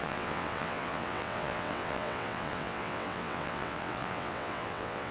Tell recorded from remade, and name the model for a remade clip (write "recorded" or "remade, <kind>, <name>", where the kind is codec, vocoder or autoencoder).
remade, vocoder, WaveNeXt